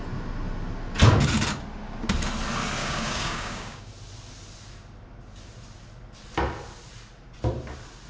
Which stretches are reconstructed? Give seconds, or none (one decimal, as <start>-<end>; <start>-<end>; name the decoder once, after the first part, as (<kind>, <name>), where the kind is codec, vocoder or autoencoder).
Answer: 2.8-3.9 (codec, DAC)